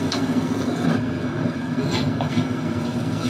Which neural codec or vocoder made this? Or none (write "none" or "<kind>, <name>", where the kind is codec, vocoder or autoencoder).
codec, SNAC